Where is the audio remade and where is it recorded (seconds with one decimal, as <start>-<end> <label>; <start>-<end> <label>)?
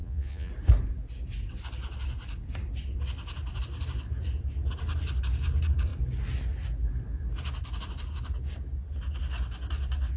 0.0-0.5 remade; 0.5-10.2 recorded